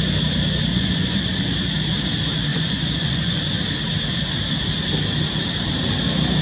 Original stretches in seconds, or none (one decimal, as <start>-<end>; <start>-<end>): 0.0-0.7; 1.2-2.5; 3.4-6.4